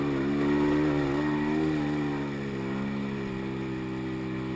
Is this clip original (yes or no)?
yes